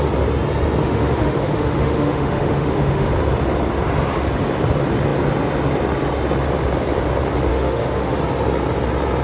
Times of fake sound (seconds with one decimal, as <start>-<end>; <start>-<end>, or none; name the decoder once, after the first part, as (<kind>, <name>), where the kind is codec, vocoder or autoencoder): 0.8-3.1 (autoencoder, DAC-VAE); 7.5-8.2

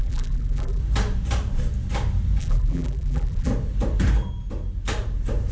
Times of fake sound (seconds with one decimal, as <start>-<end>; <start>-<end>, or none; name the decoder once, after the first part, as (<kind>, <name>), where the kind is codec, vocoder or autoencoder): 0.0-0.8 (vocoder, BigVGAN v2); 2.4-3.5

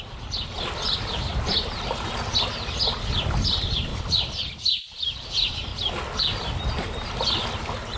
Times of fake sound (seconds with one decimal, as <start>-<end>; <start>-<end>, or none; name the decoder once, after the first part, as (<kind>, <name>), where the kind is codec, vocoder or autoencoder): 0.0-1.3 (vocoder, BigVGAN v2); 3.4-5.7; 7.5-8.0

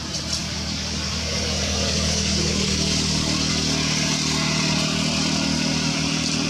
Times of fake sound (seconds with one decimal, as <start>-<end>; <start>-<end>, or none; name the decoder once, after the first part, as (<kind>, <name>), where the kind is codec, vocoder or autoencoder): 0.4-3.5 (codec, DAC)

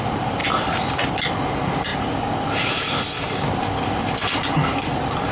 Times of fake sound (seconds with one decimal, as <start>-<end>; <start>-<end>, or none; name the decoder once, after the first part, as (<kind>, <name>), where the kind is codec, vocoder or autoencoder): none

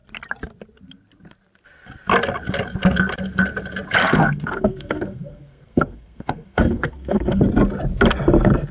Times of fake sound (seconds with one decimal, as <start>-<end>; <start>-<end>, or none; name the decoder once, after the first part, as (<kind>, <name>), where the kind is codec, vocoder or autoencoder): 4.0-7.4 (codec, SNAC)

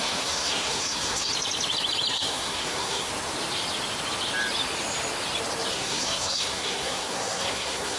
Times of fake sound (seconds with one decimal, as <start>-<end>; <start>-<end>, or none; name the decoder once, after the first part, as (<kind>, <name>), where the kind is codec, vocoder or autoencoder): 0.0-1.3 (codec, SNAC); 2.1-3.1; 5.7-8.0